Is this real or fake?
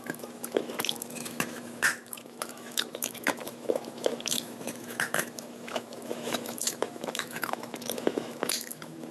fake